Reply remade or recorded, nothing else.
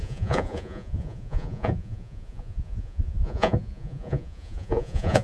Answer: remade